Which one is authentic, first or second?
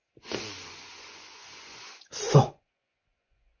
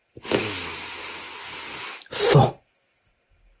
second